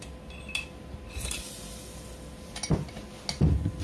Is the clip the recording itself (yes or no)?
yes